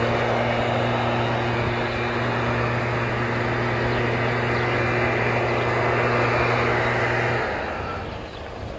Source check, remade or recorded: recorded